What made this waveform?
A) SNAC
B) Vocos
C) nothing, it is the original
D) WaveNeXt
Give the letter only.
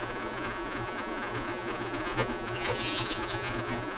B